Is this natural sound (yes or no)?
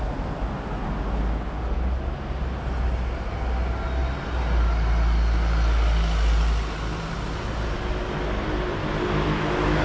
yes